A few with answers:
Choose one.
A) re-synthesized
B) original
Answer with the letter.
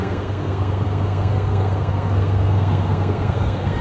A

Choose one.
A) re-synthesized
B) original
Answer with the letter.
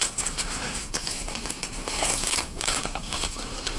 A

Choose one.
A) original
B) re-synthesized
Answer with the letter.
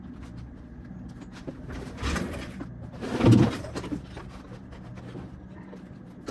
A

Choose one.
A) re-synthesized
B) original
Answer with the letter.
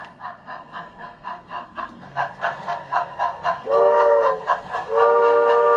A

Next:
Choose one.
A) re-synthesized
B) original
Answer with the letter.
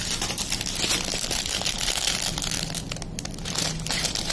B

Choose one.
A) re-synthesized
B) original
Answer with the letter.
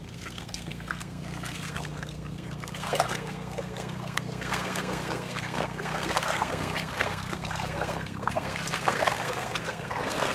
A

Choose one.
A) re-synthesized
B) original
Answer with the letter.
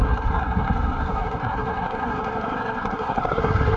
A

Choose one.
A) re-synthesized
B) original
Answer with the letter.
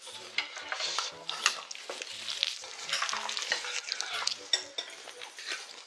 B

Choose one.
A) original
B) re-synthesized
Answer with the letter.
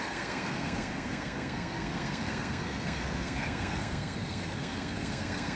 B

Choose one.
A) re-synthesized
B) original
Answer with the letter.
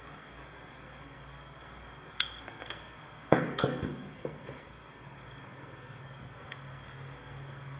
A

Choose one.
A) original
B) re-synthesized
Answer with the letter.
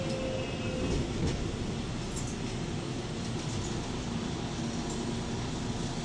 A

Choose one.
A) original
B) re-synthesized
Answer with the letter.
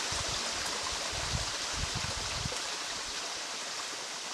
A